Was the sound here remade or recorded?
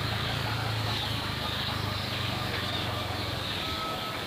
remade